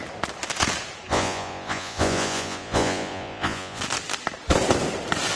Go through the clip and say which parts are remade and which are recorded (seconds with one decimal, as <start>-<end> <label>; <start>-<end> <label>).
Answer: 0.0-1.1 recorded; 1.1-3.8 remade; 3.8-5.4 recorded